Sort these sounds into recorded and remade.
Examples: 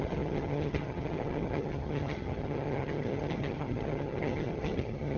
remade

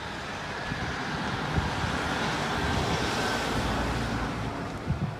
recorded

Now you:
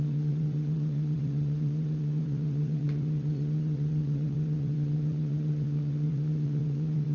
remade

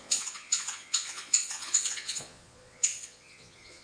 remade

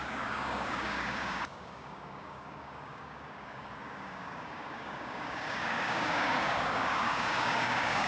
remade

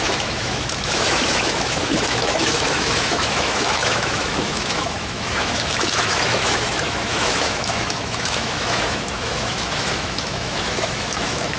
remade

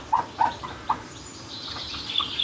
recorded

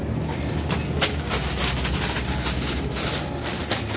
recorded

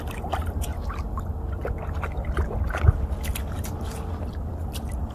recorded